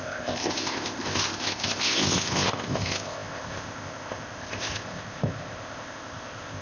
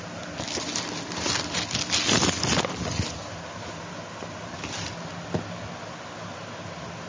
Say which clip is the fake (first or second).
first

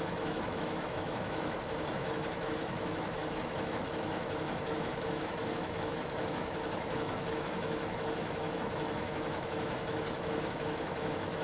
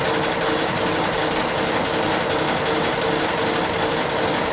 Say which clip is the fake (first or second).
first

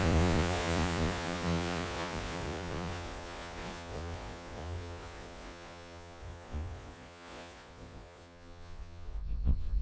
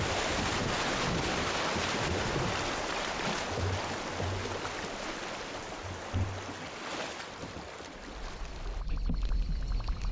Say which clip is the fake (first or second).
first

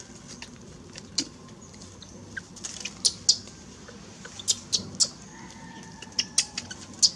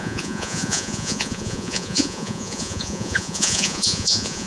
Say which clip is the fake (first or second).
second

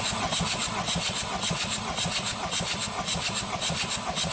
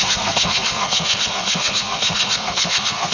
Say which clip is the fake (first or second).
second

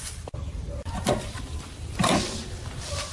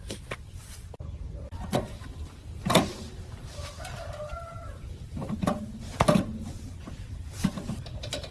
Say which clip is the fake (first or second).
second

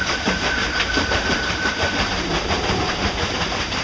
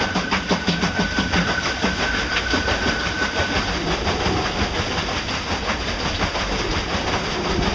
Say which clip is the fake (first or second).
first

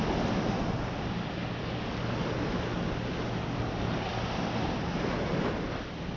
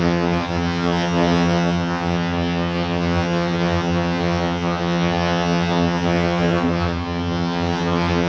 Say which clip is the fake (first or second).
second